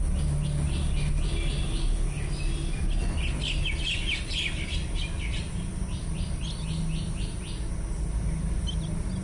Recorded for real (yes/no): yes